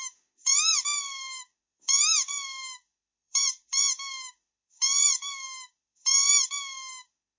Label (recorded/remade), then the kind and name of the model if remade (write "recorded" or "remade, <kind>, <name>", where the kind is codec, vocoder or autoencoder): remade, autoencoder, DAC-VAE